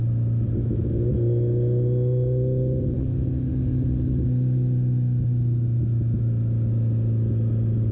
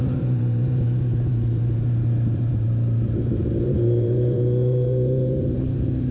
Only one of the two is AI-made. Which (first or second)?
second